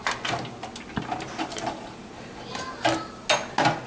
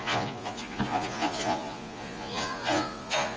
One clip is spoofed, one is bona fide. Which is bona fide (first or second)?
first